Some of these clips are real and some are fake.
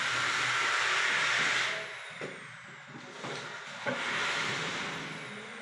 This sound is real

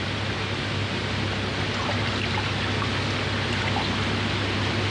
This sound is real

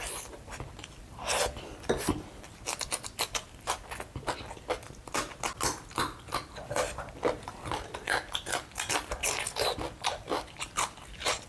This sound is real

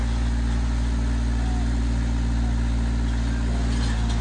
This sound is real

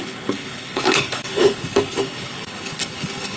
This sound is fake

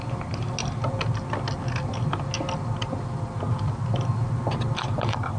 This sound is real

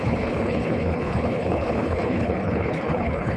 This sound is fake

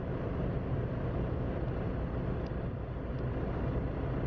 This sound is real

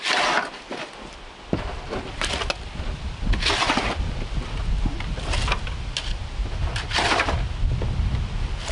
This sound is real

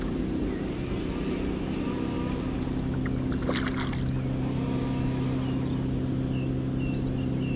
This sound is real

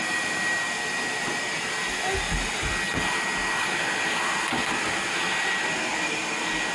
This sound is real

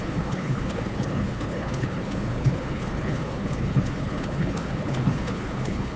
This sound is fake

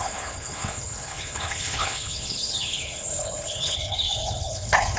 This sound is fake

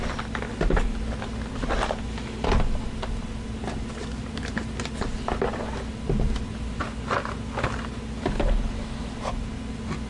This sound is real